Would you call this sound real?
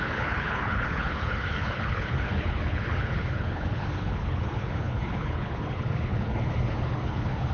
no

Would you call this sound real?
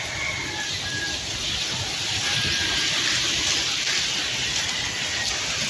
yes